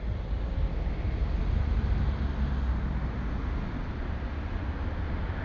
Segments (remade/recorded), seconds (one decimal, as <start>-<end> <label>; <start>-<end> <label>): 0.0-5.4 recorded